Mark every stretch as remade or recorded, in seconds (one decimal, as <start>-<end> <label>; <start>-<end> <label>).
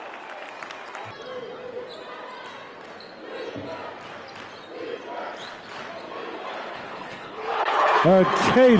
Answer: 0.0-6.7 recorded; 6.7-8.0 remade; 8.0-8.8 recorded